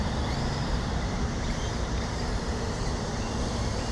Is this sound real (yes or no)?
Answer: no